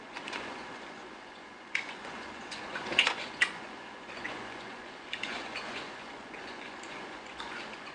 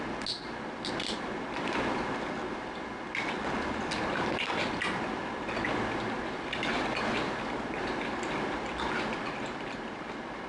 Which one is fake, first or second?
first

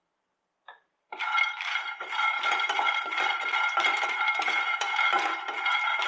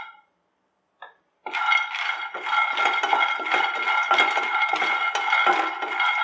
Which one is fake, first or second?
first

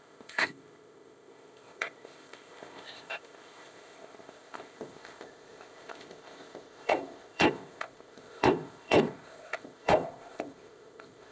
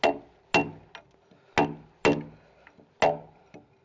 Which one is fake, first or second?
first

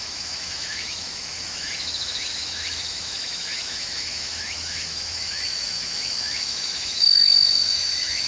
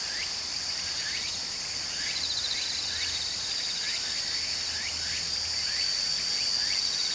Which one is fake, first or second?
first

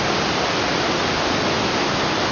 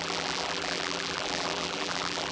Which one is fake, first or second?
second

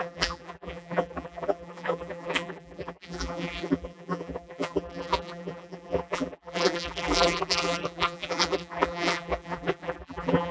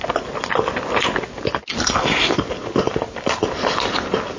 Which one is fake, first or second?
first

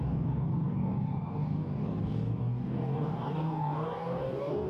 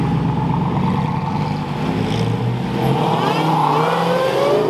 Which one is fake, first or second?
first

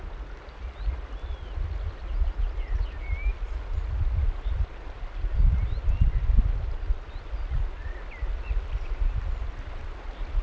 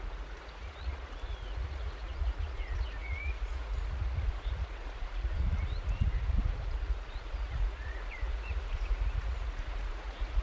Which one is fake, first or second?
second